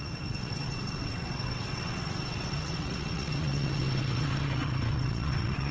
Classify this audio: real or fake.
fake